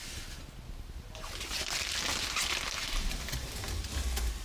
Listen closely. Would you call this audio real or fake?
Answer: real